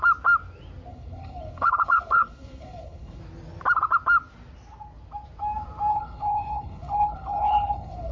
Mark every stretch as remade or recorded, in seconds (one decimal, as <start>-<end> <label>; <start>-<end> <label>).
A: 0.0-0.9 recorded; 0.9-3.2 remade; 3.2-5.9 recorded; 5.9-8.1 remade